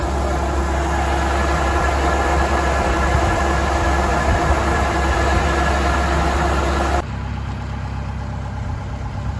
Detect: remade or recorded recorded